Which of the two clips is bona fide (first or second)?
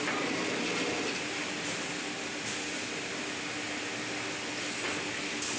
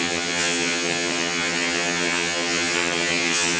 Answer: first